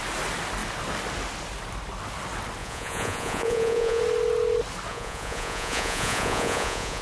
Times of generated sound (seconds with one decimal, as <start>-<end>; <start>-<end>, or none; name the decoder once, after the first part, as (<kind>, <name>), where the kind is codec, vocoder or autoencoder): 2.6-4.0 (vocoder, Vocos); 4.9-7.0